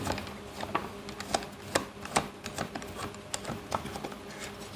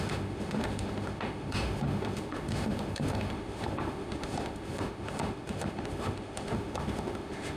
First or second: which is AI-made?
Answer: second